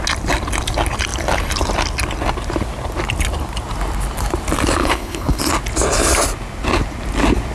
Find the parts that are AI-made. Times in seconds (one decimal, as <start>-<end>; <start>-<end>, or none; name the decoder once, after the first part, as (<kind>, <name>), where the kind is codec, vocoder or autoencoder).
4.8-5.4 (codec, HILCodec)